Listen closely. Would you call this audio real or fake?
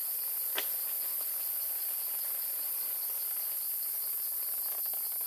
real